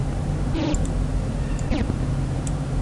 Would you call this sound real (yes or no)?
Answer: no